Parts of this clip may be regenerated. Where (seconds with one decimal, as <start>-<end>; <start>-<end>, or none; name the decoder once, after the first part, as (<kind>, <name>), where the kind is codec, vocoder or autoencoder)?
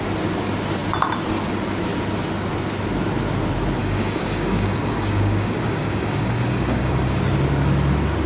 3.8-7.2 (codec, DAC)